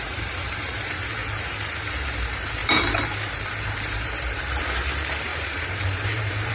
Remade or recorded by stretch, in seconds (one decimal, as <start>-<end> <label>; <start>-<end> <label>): 0.0-1.2 remade; 1.2-2.0 recorded; 2.0-6.5 remade